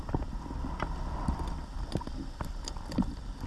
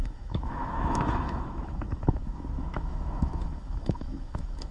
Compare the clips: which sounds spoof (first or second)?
second